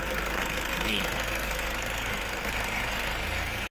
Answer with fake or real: fake